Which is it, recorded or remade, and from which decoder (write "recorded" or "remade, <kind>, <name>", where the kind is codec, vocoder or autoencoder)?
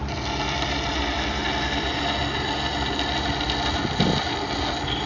recorded